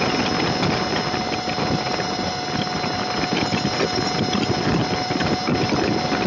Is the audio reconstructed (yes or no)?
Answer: no